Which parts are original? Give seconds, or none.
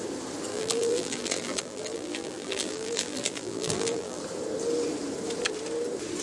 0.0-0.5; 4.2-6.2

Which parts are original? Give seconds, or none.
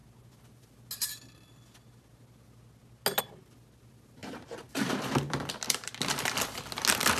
0.0-4.2; 5.9-7.2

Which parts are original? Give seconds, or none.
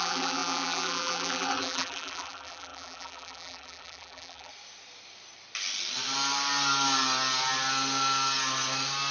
4.5-9.1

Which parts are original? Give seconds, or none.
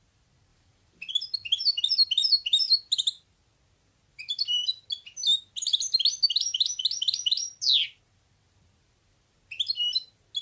0.0-0.5; 1.1-10.4